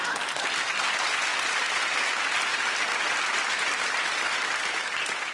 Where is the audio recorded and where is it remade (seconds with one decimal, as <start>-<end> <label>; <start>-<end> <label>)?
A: 0.0-0.9 remade; 0.9-1.3 recorded; 1.3-2.1 remade; 2.1-2.5 recorded; 2.5-4.7 remade; 4.7-5.3 recorded